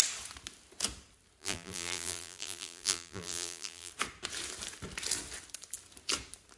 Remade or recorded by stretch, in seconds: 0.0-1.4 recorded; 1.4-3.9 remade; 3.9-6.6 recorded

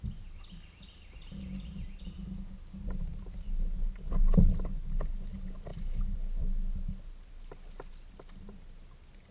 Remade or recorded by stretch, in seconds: 0.0-9.3 recorded

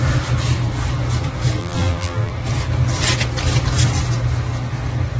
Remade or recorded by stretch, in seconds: 0.0-1.6 recorded; 1.6-2.3 remade; 2.3-5.2 recorded

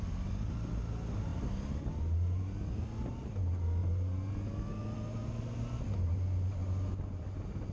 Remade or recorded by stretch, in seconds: 0.0-3.8 recorded; 3.8-4.3 remade; 4.3-6.6 recorded; 6.6-7.2 remade; 7.2-7.7 recorded

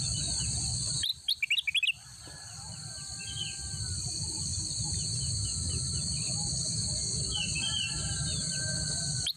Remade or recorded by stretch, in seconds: 0.0-1.1 remade; 1.1-3.8 recorded; 3.8-4.5 remade; 4.5-8.5 recorded; 8.5-9.4 remade

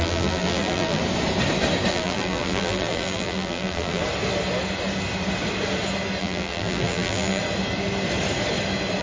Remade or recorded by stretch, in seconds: 0.0-1.0 remade; 1.0-1.9 recorded; 1.9-4.0 remade; 4.0-6.2 recorded; 6.2-7.4 remade; 7.4-9.0 recorded

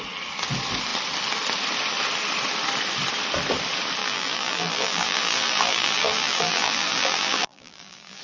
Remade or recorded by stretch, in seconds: 0.0-4.0 recorded; 4.0-8.2 remade